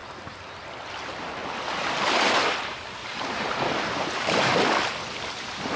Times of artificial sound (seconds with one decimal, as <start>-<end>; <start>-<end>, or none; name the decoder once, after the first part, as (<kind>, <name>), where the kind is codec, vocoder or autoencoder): 1.0-1.4 (vocoder, BigVGAN v2); 1.9-4.5